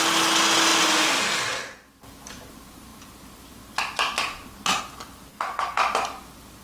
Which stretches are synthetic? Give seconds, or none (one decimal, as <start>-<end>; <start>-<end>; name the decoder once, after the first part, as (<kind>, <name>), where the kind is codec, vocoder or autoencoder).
5.3-5.8 (codec, SNAC)